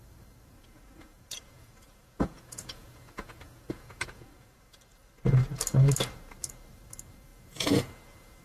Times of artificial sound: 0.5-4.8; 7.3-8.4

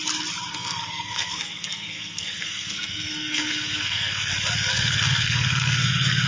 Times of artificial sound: 0.5-4.3; 4.7-6.3

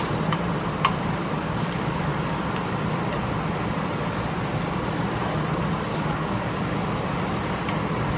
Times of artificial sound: 1.2-2.1; 5.9-6.5

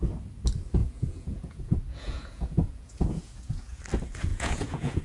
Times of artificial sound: 0.8-3.8; 4.3-5.0

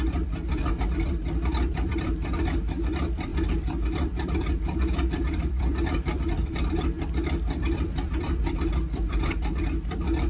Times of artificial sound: 0.0-10.3

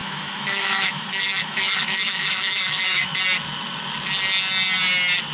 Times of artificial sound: 0.0-3.2

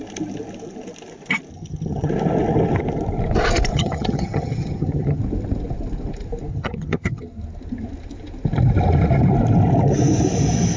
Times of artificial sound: 1.5-2.1; 3.7-5.2; 6.5-7.2

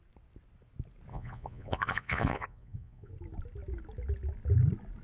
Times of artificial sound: 1.1-3.1